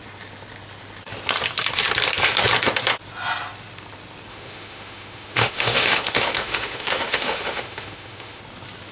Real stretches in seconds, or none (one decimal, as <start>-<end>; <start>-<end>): 0.0-4.3; 8.4-8.9